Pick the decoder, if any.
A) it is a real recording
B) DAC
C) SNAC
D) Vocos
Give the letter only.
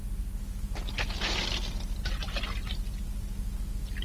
A